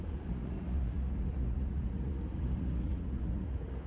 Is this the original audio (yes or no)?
no